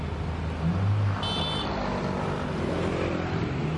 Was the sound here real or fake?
real